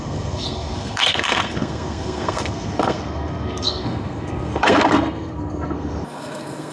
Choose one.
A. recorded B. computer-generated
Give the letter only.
B